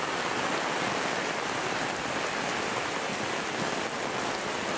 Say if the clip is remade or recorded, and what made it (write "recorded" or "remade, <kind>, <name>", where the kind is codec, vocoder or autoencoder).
recorded